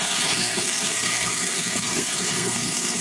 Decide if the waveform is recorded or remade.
remade